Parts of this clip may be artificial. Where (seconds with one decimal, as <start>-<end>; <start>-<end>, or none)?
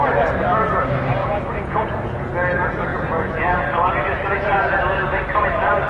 1.2-2.3; 2.9-3.9